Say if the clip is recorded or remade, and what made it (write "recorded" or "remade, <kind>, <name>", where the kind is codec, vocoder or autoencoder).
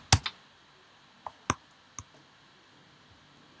recorded